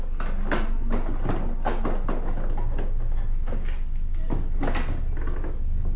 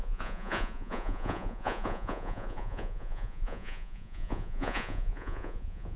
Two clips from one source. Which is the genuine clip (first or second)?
first